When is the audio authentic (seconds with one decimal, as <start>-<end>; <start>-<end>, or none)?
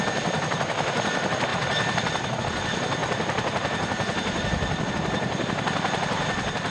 0.0-6.7